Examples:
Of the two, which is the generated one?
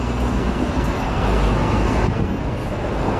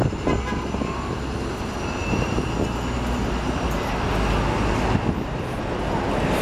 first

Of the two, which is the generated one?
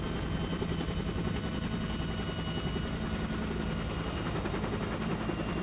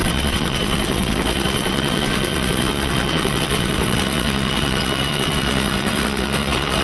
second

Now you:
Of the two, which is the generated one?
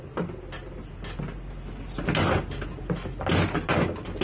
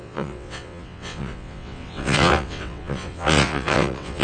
second